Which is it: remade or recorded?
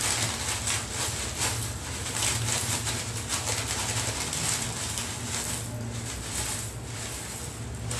recorded